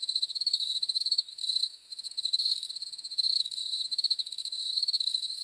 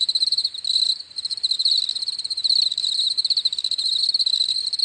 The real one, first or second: second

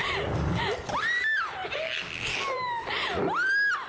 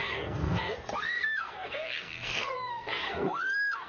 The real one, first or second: first